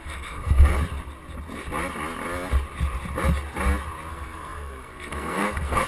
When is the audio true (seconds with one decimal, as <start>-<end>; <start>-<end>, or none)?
0.7-4.1